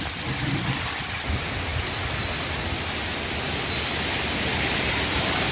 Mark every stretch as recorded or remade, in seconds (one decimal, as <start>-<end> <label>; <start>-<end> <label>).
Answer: 0.0-5.5 recorded